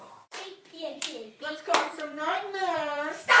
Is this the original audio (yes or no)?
no